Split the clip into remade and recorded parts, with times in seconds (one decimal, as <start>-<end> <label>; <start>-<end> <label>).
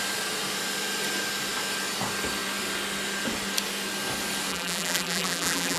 0.0-4.5 recorded; 4.5-5.8 remade